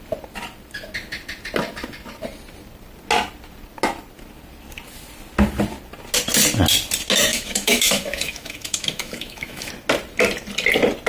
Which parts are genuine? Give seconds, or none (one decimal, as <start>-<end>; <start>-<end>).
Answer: 0.0-7.3; 9.7-11.1